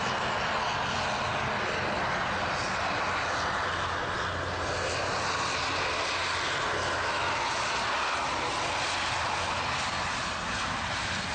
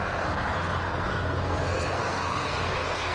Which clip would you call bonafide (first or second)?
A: first